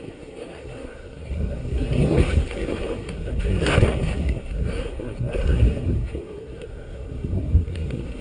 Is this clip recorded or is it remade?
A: remade